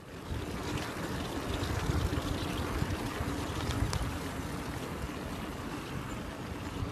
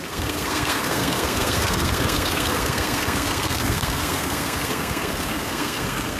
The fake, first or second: second